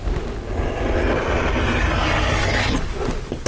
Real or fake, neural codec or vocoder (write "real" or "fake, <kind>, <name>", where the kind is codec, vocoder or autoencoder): real